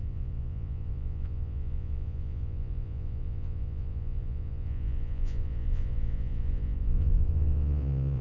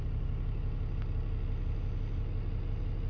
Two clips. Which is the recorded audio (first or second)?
second